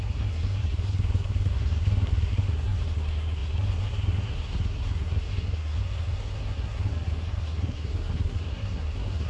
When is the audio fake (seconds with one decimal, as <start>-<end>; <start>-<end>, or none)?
0.0-9.3

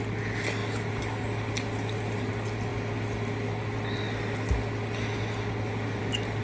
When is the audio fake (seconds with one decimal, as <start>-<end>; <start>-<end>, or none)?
none

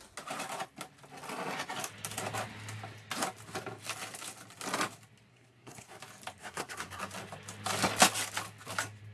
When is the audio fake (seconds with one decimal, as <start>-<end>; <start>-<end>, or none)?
5.3-6.0; 6.4-7.0